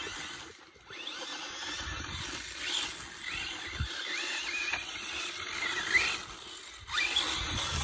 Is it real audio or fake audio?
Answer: real